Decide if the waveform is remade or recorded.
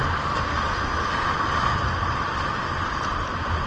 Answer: recorded